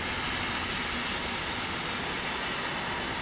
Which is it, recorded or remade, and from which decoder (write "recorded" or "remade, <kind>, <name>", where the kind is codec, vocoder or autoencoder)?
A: recorded